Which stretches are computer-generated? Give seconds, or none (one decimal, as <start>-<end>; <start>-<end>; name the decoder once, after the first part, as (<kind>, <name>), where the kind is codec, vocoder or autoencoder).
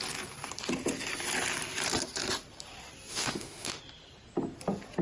3.1-3.8 (autoencoder, DAC-VAE)